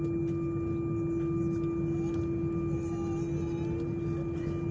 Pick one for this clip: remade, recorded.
recorded